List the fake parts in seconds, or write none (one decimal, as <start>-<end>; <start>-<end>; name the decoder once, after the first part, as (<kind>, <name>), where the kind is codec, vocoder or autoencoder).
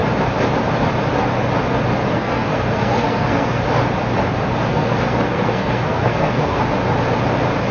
2.1-3.6 (codec, SNAC); 4.7-6.6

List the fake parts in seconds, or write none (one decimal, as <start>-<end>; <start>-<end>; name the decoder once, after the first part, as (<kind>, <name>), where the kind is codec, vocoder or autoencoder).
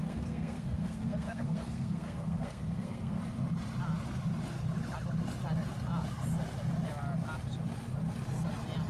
0.0-3.2 (codec, SNAC)